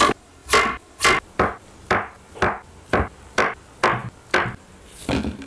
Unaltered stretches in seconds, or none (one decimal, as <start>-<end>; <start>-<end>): 0.0-5.5